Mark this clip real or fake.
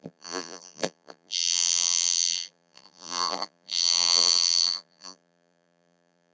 fake